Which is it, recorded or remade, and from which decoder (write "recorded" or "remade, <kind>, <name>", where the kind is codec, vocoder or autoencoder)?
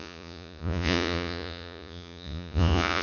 remade, vocoder, Vocos